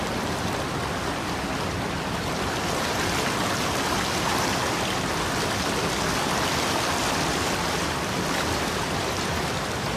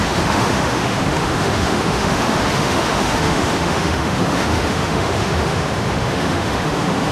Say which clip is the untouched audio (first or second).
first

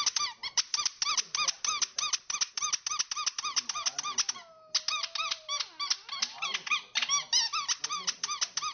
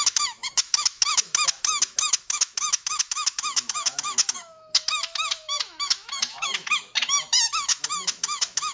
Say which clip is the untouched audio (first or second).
first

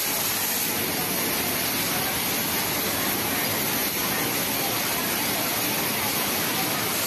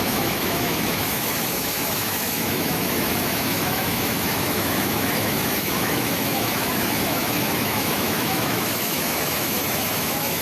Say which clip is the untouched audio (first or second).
first